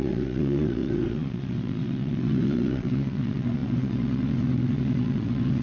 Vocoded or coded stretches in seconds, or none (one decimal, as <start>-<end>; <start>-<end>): 0.0-5.6